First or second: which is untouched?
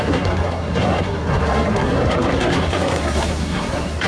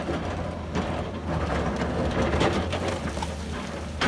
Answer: second